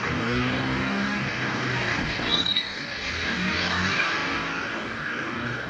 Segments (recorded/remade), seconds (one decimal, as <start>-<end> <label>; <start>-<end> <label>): 0.0-5.7 remade